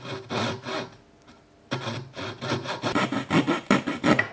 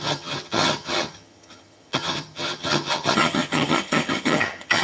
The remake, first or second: second